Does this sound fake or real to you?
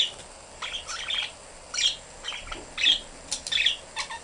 real